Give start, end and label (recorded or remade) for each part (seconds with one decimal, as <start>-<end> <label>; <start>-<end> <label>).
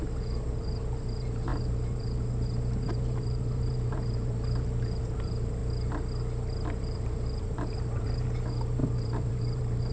0.0-5.6 remade; 5.6-6.8 recorded; 6.8-9.9 remade